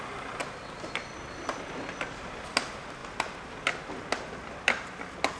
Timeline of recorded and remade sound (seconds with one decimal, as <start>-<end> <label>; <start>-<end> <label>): 0.0-5.4 recorded

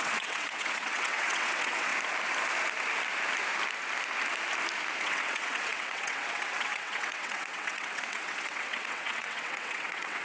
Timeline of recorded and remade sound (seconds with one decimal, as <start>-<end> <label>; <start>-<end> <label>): 0.0-1.9 remade; 1.9-5.0 recorded; 5.0-10.2 remade

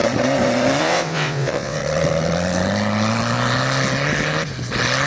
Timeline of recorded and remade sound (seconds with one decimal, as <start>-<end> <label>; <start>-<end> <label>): 0.0-0.8 recorded; 0.8-1.8 remade; 1.8-5.1 recorded